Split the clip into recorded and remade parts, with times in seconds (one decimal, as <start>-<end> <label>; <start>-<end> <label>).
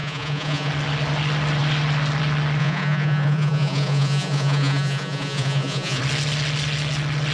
0.0-0.7 remade; 0.7-2.6 recorded; 2.6-6.0 remade; 6.0-7.3 recorded